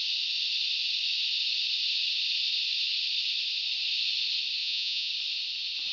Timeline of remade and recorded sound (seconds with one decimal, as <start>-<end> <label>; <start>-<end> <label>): 0.0-4.6 recorded; 4.6-5.1 remade; 5.1-5.9 recorded